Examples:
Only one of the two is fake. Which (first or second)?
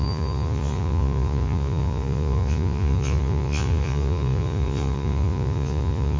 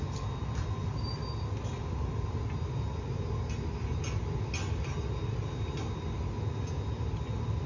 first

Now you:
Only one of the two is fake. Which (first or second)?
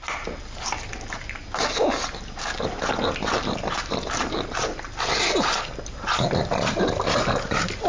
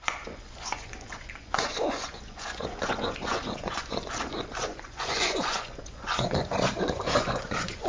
second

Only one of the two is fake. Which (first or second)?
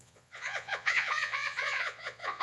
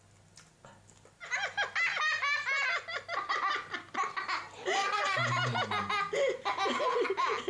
first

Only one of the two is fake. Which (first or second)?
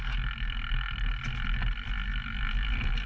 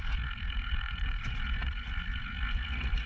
second